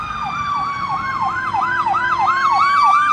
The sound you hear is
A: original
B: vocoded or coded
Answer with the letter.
A